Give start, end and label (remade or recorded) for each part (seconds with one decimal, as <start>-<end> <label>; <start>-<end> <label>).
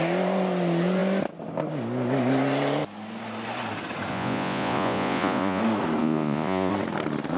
0.0-4.1 recorded; 4.1-5.6 remade; 5.6-6.0 recorded; 6.0-6.7 remade; 6.7-7.4 recorded